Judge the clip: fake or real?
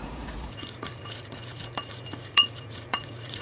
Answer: fake